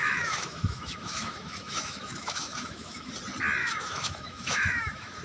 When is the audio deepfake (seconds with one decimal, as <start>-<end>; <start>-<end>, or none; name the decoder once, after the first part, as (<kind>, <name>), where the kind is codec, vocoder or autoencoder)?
0.0-3.1 (autoencoder, DAC-VAE); 3.6-5.2